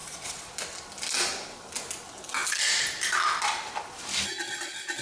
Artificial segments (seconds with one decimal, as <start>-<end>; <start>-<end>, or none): 0.0-0.5